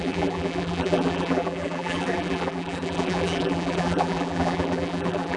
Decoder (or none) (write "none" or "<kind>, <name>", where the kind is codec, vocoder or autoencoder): vocoder, BigVGAN v2